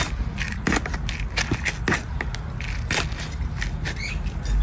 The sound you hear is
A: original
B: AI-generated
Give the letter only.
A